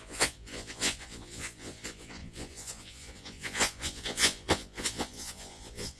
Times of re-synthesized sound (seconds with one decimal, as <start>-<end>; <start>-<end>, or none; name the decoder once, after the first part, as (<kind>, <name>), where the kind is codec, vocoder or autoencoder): 0.0-6.0 (vocoder, Vocos)